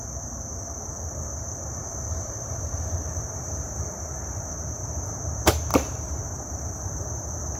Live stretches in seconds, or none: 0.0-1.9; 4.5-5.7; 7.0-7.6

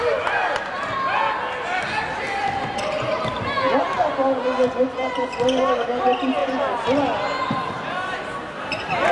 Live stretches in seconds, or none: 0.0-9.1

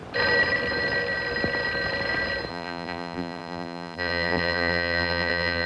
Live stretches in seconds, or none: 0.0-2.5

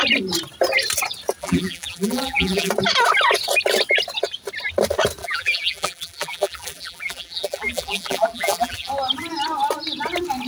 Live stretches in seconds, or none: 0.0-1.4; 2.7-5.2; 8.9-10.5